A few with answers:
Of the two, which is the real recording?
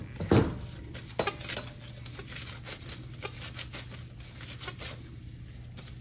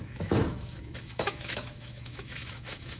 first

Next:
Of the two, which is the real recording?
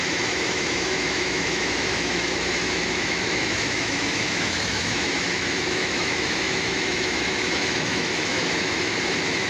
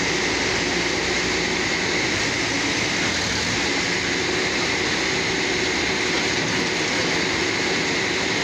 second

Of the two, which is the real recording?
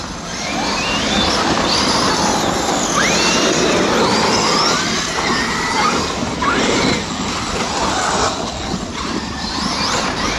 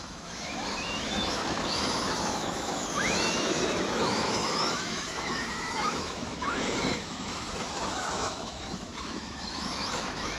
first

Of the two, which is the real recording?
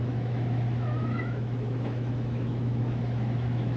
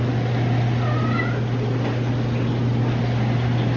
second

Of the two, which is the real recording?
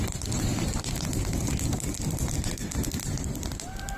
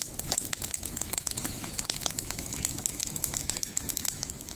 first